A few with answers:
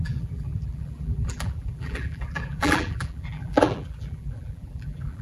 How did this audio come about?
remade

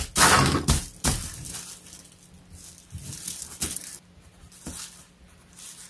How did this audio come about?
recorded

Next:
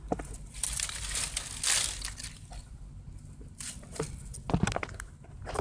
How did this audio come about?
recorded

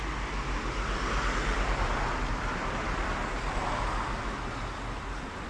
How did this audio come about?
recorded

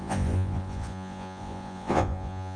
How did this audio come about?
remade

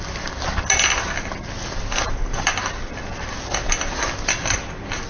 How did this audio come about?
recorded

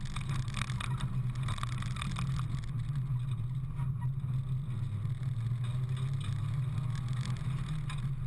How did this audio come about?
recorded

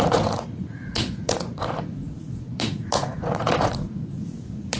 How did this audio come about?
remade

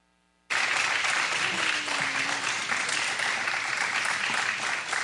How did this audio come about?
remade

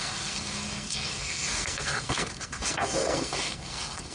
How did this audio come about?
remade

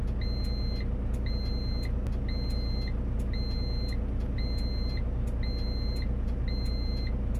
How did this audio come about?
recorded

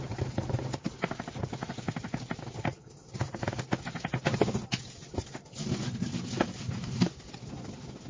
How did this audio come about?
recorded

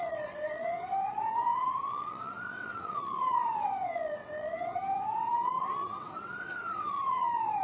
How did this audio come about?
remade